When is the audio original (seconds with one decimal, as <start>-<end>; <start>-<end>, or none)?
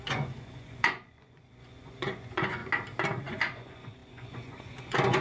2.6-3.2